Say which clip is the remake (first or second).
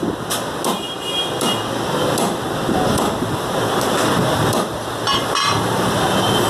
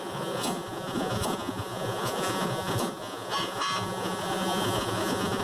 second